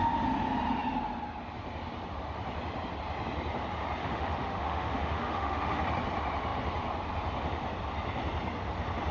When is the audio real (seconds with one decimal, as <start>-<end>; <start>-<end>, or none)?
0.0-4.0; 5.8-9.1